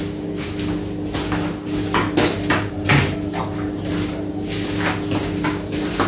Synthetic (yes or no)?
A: no